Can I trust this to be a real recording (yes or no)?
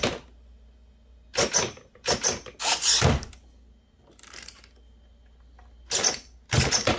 yes